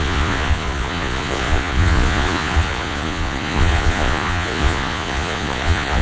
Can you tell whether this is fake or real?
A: fake